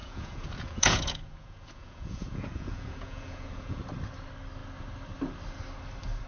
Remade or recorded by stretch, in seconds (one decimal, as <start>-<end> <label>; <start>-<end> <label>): 0.0-3.8 remade; 3.8-6.3 recorded